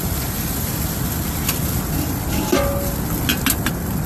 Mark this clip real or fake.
real